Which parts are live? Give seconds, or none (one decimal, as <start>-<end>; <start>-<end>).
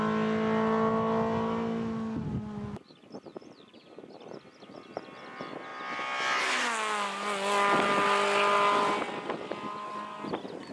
0.0-10.7